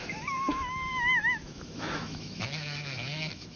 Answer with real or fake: fake